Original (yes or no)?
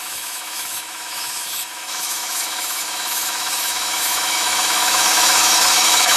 no